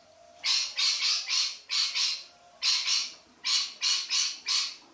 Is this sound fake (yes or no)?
no